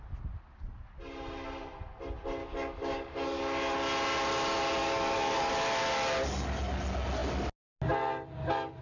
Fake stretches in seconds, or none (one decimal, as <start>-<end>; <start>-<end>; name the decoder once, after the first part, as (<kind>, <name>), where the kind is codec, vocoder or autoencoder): 2.4-3.4 (codec, DAC); 4.8-5.5